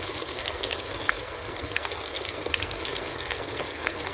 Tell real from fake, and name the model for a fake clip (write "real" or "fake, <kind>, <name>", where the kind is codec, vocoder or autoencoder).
fake, codec, SNAC